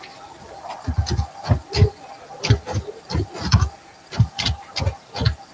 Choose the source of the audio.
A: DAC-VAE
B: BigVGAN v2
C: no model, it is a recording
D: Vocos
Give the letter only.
B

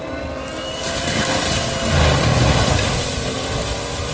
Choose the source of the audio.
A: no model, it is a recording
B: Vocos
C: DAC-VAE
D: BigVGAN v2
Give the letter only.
A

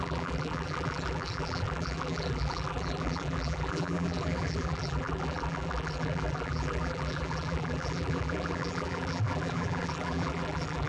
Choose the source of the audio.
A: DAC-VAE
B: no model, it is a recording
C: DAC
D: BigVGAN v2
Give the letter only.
D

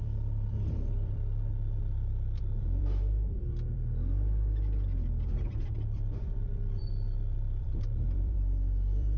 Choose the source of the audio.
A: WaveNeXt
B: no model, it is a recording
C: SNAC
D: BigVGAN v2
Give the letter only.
D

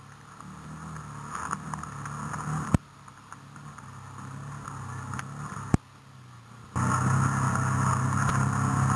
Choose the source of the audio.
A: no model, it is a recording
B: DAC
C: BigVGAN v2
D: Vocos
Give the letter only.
A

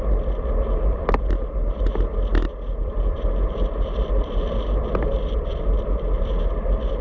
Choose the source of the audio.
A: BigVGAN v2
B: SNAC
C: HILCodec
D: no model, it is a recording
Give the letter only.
A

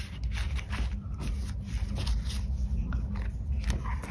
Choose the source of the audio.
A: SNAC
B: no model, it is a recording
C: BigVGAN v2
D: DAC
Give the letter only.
B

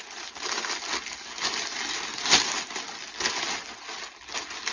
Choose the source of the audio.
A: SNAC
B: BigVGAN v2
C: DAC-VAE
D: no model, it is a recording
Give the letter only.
D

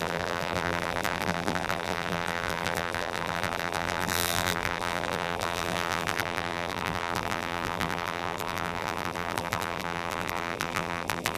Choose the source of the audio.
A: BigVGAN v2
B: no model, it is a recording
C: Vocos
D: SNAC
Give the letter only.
A